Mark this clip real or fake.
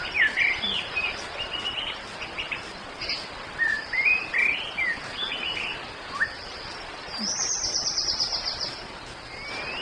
real